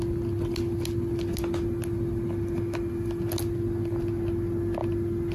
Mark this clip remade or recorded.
recorded